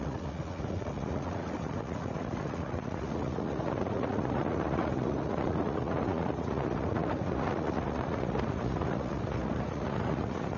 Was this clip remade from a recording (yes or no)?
yes